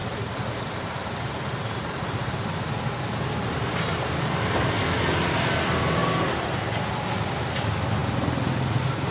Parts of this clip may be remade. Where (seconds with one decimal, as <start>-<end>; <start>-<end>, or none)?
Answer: 0.0-4.8